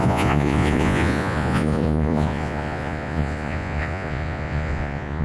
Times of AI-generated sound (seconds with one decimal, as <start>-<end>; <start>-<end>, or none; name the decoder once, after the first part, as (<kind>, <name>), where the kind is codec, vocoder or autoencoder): 0.0-5.2 (vocoder, Vocos)